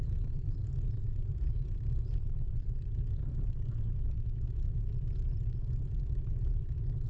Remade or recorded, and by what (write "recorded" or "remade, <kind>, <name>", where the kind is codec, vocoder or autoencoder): recorded